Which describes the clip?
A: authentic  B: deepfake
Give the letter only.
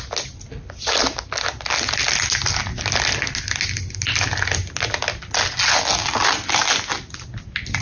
A